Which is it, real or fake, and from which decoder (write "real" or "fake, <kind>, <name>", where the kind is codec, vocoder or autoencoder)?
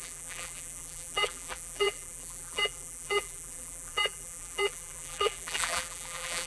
fake, vocoder, BigVGAN v2